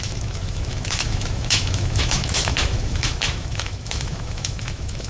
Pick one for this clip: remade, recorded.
remade